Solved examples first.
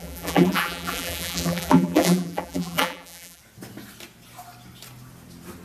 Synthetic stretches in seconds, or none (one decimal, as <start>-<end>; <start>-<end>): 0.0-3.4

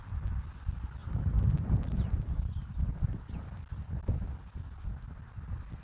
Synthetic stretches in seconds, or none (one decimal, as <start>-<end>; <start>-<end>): 1.0-4.5

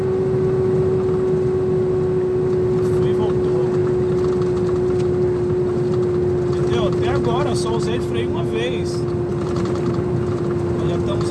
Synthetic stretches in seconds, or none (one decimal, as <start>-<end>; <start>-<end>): 9.3-10.4

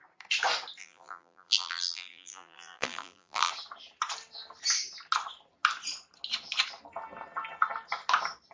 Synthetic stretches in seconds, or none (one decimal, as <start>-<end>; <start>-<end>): 0.8-3.5